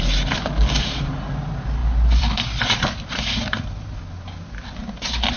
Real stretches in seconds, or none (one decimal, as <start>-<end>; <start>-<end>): 0.0-5.4